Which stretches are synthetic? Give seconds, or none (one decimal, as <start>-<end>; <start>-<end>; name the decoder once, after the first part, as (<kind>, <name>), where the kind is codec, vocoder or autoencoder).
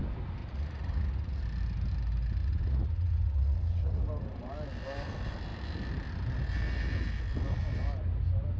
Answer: 0.4-1.4 (vocoder, Vocos); 2.4-4.0